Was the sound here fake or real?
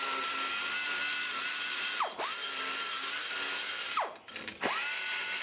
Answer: real